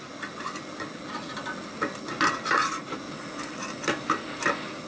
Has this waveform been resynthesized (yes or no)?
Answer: no